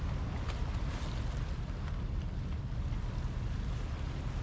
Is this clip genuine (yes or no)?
yes